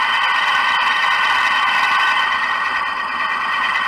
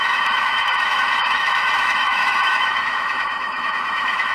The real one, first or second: first